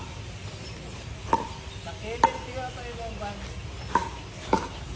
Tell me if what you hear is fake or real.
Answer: real